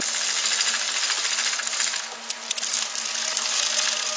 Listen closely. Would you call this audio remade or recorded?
recorded